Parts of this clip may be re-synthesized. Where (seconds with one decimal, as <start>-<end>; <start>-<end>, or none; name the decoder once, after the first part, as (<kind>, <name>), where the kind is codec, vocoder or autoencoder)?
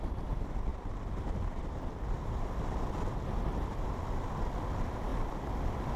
0.7-2.0 (vocoder, BigVGAN v2); 5.1-6.0